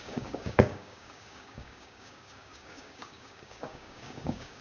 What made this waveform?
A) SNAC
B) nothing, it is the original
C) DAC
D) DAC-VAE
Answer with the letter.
C